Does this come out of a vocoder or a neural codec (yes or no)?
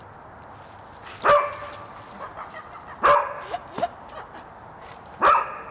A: no